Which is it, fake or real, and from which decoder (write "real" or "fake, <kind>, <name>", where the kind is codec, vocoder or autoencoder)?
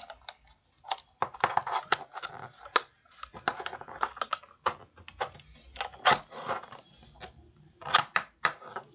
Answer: real